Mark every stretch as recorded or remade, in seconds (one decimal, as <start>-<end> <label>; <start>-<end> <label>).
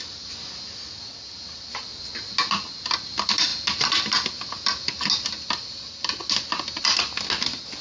0.0-7.8 recorded